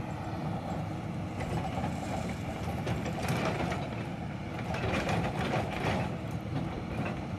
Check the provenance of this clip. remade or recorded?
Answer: remade